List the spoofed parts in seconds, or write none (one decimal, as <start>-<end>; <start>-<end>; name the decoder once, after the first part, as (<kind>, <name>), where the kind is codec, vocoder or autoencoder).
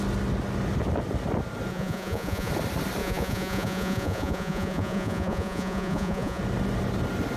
1.7-2.5 (vocoder, Vocos); 3.0-6.4